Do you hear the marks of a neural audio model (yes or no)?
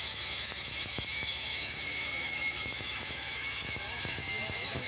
yes